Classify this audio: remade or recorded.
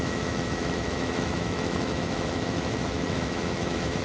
remade